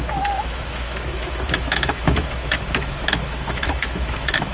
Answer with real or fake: fake